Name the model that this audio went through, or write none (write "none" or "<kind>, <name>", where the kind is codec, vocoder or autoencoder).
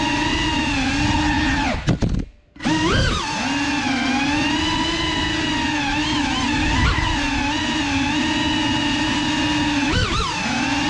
none